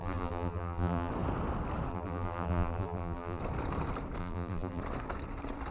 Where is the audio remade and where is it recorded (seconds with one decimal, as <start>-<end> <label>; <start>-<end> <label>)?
0.0-1.1 remade; 1.1-1.9 recorded; 1.9-3.4 remade; 3.4-4.2 recorded; 4.2-4.8 remade; 4.8-5.7 recorded